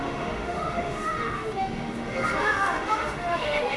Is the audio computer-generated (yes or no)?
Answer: yes